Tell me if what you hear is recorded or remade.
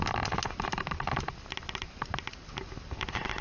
recorded